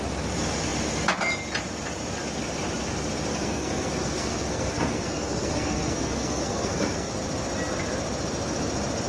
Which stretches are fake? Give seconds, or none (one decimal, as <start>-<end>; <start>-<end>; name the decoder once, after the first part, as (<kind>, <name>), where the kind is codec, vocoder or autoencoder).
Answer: 3.3-7.1 (codec, SNAC)